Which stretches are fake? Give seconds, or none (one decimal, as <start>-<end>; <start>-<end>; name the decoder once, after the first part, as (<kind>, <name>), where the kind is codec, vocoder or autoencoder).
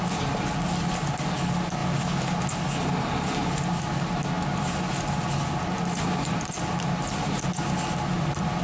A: none